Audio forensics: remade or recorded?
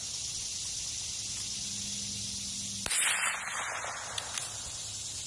recorded